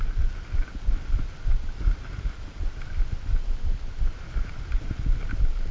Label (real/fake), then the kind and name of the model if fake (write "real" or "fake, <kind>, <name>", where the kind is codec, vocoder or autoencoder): real